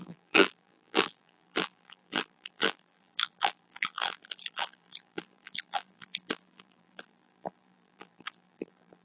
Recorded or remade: remade